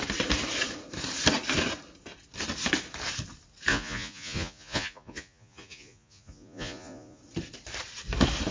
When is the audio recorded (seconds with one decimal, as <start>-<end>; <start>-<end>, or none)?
0.0-3.7; 7.2-8.5